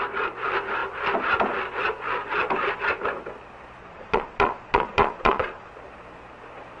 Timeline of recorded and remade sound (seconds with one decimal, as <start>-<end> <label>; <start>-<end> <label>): 0.0-3.8 recorded; 3.8-5.7 remade; 5.7-6.8 recorded